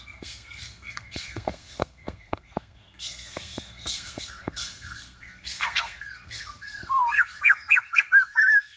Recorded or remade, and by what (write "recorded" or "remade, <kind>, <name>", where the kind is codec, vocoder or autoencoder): remade, codec, SNAC